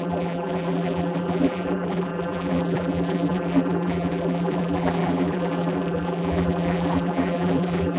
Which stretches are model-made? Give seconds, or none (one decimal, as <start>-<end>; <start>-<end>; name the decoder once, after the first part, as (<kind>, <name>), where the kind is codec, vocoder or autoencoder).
0.0-8.0 (vocoder, BigVGAN v2)